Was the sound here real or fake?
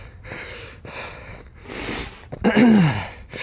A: real